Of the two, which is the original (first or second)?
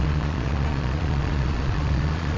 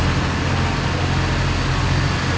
second